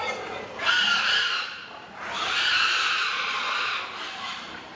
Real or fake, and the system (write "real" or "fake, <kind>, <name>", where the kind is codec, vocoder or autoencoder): fake, vocoder, BigVGAN v2